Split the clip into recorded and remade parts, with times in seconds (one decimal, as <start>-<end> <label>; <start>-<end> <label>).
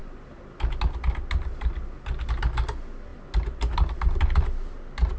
0.0-5.2 recorded